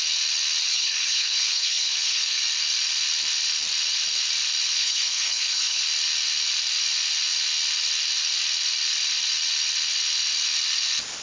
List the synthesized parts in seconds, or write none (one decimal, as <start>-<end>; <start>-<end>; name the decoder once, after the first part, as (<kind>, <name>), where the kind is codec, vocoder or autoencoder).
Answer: 0.7-2.4 (codec, HILCodec); 4.8-5.8